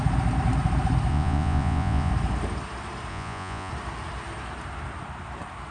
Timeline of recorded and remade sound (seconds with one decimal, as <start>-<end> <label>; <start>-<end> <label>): 0.0-1.1 recorded; 1.1-2.1 remade; 2.1-3.1 recorded; 3.1-3.7 remade; 3.7-5.7 recorded